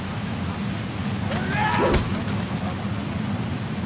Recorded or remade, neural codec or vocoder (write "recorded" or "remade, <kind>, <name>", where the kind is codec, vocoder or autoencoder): recorded